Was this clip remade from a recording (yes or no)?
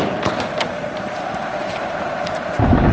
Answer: yes